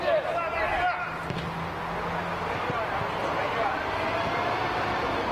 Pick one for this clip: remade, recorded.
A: recorded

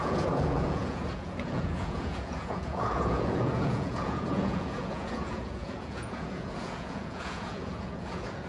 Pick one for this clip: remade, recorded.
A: remade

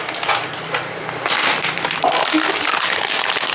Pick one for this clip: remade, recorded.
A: remade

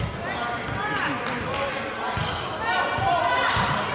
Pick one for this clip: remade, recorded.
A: recorded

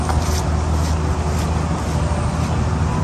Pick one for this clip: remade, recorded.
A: recorded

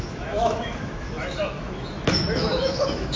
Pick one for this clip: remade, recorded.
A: remade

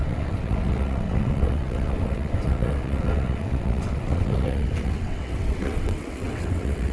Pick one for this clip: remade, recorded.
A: remade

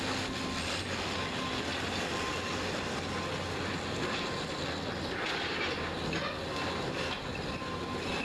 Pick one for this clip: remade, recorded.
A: recorded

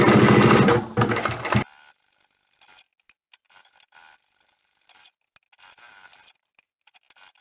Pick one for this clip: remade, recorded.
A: recorded